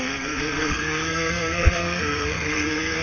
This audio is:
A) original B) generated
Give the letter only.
B